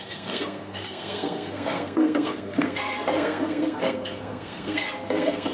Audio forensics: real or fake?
fake